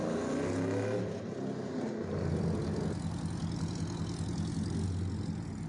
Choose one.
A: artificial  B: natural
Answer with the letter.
B